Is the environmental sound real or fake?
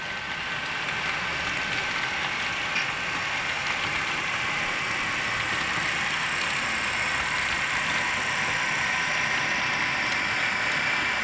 real